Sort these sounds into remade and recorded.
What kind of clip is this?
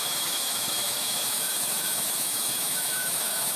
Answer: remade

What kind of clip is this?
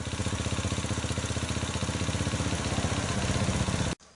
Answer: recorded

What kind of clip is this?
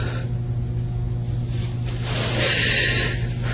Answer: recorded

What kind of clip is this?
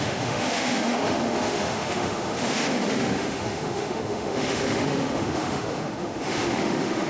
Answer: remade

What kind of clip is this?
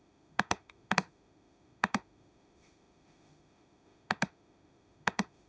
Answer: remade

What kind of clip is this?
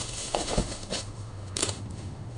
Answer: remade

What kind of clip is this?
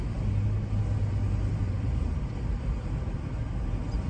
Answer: recorded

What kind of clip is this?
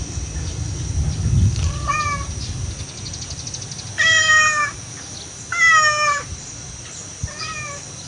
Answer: recorded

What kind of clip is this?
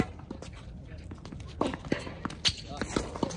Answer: recorded